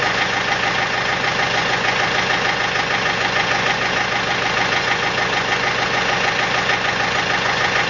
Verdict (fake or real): fake